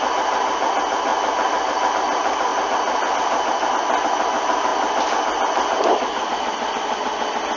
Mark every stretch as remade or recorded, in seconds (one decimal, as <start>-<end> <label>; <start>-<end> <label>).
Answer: 0.0-7.6 recorded